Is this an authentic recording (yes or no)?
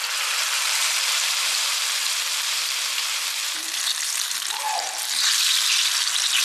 no